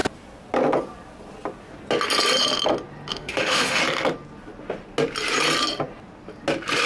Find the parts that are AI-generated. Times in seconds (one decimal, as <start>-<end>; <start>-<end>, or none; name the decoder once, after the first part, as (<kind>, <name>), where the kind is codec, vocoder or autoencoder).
3.1-3.8 (autoencoder, DAC-VAE)